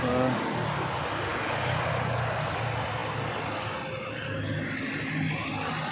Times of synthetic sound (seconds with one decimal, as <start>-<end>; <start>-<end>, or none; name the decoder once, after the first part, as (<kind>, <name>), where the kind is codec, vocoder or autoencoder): 1.3-1.9 (codec, DAC)